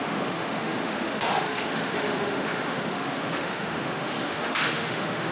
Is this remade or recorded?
remade